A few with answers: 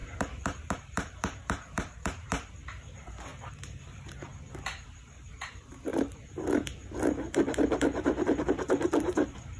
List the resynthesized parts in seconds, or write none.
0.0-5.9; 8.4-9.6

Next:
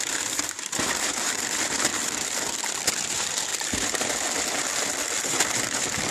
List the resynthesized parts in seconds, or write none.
0.0-3.5; 5.5-6.1

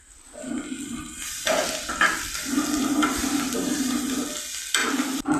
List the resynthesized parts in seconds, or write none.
3.2-3.9

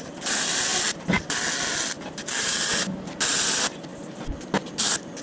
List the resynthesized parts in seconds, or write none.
0.0-2.7; 3.3-3.9

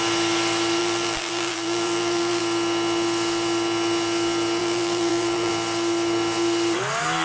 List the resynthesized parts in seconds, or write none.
0.8-2.4; 4.6-5.5